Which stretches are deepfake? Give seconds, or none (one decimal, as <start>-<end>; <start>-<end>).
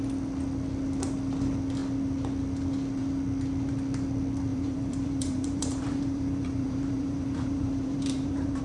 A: 4.5-8.6